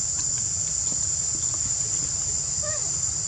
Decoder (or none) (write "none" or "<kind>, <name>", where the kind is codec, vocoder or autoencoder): none